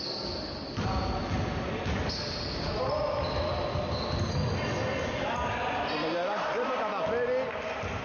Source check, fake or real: real